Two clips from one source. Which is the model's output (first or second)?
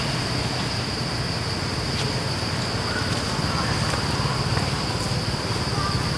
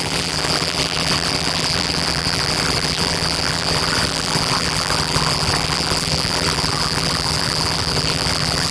second